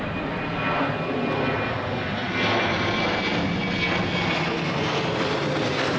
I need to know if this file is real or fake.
real